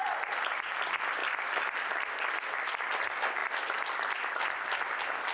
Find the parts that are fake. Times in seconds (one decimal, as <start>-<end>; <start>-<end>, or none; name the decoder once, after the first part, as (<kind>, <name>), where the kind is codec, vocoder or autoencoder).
none